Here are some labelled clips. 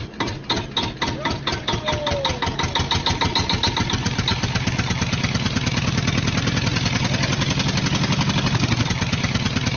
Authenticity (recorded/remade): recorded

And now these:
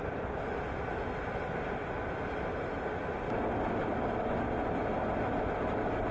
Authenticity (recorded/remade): recorded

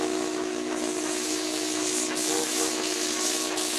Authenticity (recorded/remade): remade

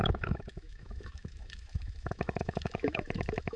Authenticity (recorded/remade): remade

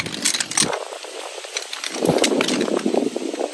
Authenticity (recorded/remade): recorded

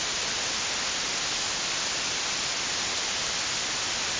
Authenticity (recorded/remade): recorded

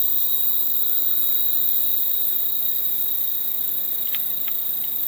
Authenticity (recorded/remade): recorded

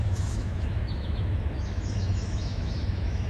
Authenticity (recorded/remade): remade